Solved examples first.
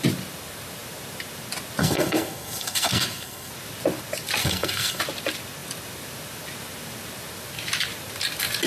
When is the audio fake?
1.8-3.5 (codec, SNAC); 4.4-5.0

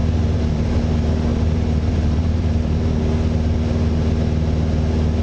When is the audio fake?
0.0-0.8 (vocoder, BigVGAN v2); 1.3-3.0

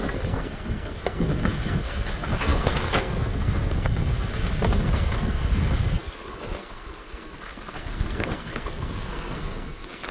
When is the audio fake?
0.0-10.1 (codec, SNAC)

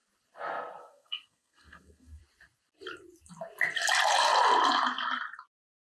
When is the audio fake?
0.8-2.2 (codec, SNAC)

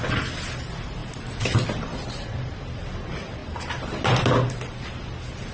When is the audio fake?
none

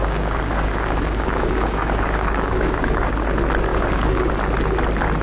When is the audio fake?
0.0-3.1 (codec, DAC); 3.7-4.3

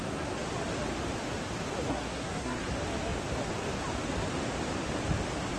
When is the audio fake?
1.9-2.7 (codec, SNAC)

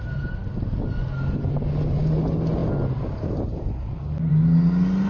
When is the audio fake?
none